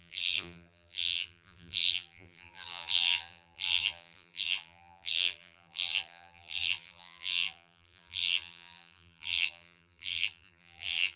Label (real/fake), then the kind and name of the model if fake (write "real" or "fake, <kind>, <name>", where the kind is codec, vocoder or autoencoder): fake, vocoder, BigVGAN v2